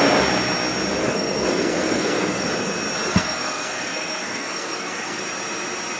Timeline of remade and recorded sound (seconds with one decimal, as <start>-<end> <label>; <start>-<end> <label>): 0.0-1.0 recorded; 1.0-2.5 remade; 2.5-3.1 recorded; 3.1-5.2 remade; 5.2-6.0 recorded